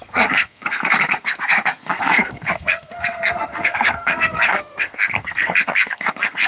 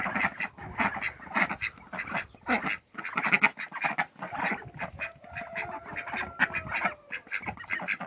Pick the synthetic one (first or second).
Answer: first